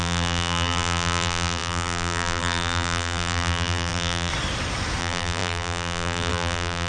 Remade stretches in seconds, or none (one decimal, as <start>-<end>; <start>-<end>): 0.0-4.3; 5.0-6.9